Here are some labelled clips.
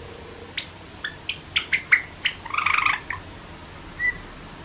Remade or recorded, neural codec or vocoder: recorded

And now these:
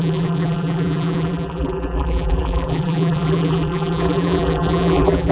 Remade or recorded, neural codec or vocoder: remade, vocoder, BigVGAN v2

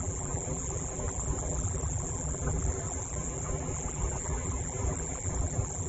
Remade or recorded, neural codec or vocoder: remade, vocoder, BigVGAN v2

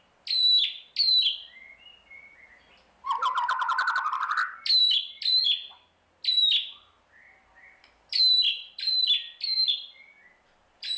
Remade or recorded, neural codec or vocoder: recorded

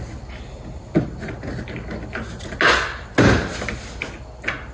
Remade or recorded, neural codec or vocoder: recorded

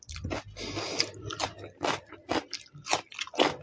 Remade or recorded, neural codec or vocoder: recorded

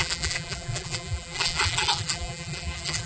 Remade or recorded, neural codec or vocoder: remade, vocoder, BigVGAN v2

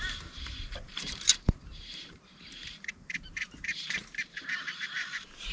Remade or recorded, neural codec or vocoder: remade, vocoder, BigVGAN v2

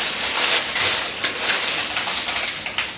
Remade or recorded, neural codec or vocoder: recorded